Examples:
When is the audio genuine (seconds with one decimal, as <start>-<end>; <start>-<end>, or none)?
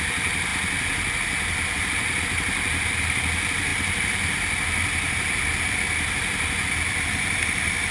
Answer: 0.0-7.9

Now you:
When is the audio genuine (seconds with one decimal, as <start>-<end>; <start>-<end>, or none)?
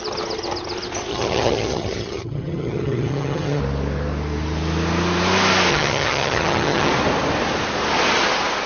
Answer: 0.0-1.1; 3.6-5.7; 6.9-8.7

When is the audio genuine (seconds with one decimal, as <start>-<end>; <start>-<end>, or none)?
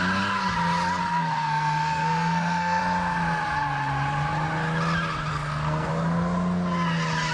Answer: 0.0-1.0; 2.8-5.3; 5.9-7.3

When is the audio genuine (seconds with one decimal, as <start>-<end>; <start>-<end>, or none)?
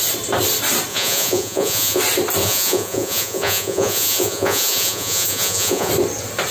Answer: 0.0-0.9; 2.0-2.4; 5.9-6.5